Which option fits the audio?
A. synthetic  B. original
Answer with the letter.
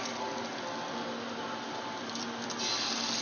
B